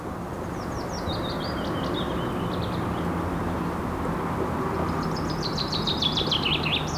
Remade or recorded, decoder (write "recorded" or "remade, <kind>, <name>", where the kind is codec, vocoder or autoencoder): recorded